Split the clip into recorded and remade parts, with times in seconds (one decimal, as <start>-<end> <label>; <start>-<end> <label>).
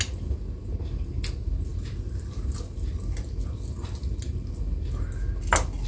0.0-5.9 recorded